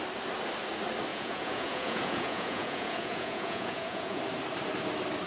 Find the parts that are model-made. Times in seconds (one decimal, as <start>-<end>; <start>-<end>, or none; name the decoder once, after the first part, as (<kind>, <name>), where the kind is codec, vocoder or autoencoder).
1.1-4.2 (vocoder, Vocos)